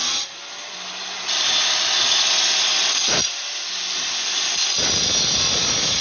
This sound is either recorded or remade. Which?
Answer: recorded